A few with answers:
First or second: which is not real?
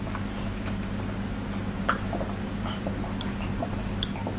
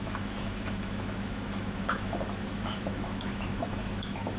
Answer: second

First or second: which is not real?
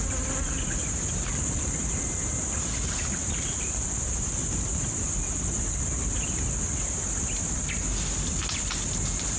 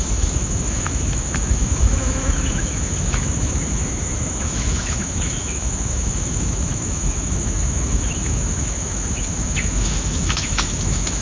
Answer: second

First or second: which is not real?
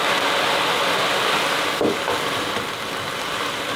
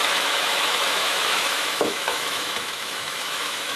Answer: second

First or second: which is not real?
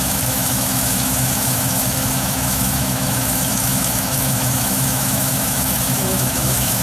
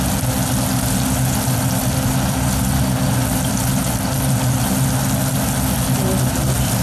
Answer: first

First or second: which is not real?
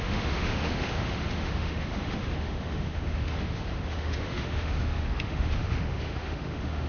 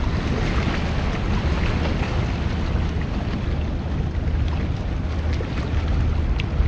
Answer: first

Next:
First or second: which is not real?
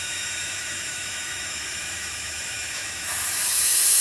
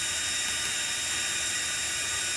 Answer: first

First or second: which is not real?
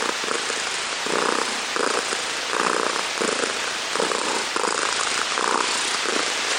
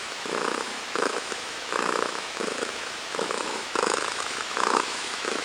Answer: second